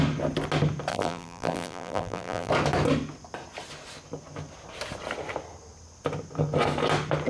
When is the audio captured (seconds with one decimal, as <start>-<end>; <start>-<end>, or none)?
0.0-0.9; 2.5-7.3